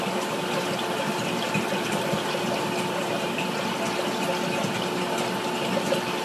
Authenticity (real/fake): real